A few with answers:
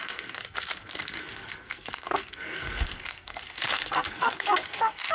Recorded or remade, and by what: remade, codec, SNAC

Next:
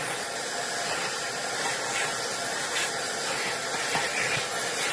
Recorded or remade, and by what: recorded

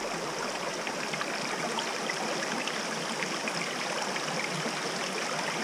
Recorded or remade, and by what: recorded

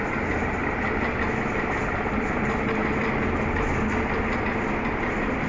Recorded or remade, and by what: recorded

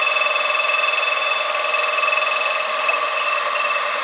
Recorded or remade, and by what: recorded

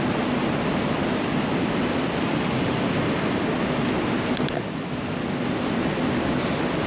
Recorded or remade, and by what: recorded